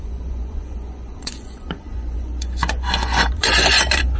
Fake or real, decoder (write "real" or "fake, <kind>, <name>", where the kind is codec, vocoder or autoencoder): fake, vocoder, Vocos